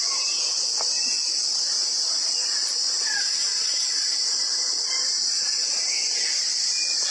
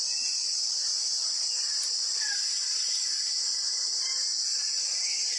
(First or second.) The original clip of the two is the second